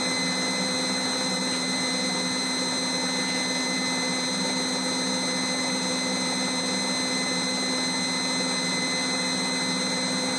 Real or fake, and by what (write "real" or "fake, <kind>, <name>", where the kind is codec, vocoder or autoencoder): real